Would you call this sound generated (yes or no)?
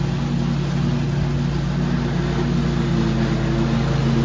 no